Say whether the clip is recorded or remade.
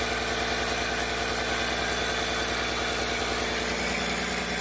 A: recorded